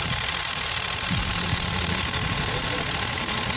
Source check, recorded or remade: remade